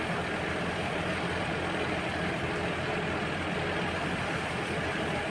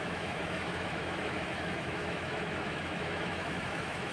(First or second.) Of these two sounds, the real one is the first